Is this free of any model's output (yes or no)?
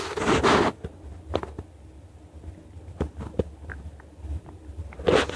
yes